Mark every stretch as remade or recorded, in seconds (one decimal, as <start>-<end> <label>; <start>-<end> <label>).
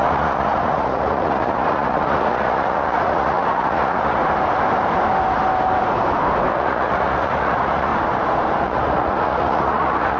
0.0-4.2 remade; 4.2-6.5 recorded; 6.5-7.9 remade; 7.9-8.6 recorded; 8.6-10.2 remade